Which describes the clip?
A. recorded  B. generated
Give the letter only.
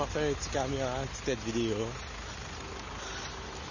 A